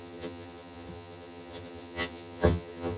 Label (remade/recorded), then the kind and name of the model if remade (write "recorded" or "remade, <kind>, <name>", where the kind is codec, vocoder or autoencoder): remade, vocoder, HiFi-GAN